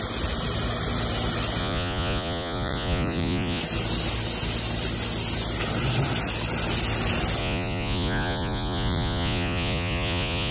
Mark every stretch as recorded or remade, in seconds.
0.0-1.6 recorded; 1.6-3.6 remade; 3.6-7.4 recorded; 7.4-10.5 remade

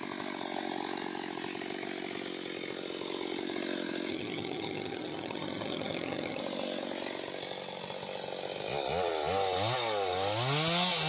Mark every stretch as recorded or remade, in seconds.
0.0-4.1 recorded; 4.1-6.4 remade; 6.4-11.1 recorded